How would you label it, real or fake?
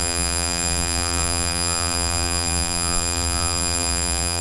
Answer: fake